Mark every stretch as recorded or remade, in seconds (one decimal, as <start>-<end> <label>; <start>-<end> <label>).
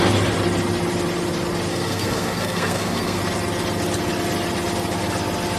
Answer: 0.0-1.7 recorded; 1.7-3.2 remade; 3.2-5.6 recorded